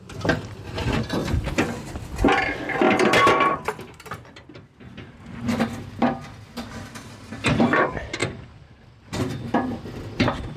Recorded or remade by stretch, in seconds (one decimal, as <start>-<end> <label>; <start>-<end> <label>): 0.0-10.6 recorded